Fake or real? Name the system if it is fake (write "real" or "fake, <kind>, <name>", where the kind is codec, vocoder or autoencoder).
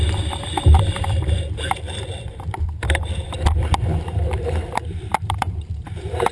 fake, vocoder, BigVGAN v2